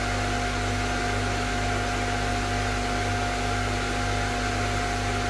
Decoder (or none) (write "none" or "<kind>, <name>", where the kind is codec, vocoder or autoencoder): none